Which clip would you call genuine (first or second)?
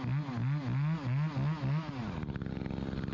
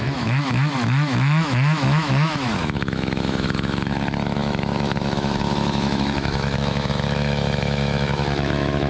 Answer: first